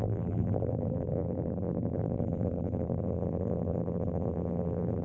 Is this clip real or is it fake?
fake